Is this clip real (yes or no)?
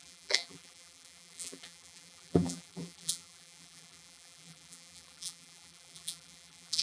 no